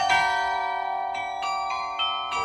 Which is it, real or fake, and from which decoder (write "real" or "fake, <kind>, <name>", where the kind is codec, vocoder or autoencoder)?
fake, vocoder, BigVGAN v2